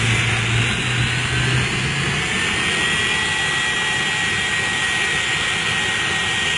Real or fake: real